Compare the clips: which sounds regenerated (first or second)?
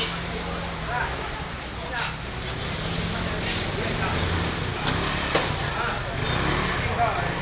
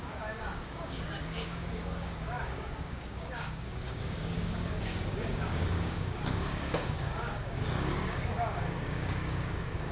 second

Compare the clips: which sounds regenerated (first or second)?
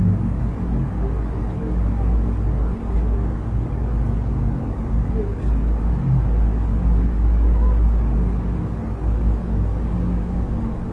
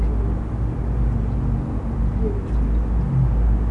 first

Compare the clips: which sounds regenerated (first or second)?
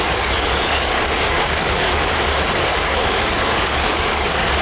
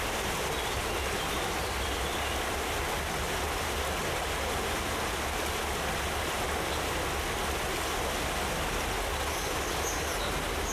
first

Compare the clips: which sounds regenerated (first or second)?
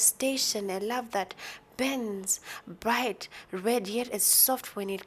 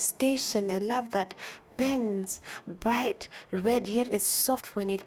second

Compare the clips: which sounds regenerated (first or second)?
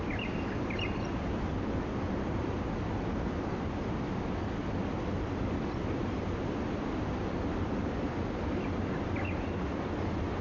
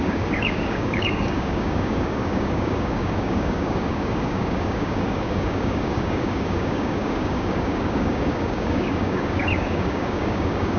second